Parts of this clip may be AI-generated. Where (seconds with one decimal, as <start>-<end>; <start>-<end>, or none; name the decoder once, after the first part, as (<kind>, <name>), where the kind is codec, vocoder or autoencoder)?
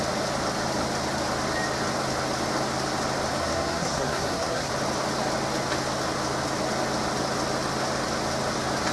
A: 3.4-4.7 (codec, SNAC)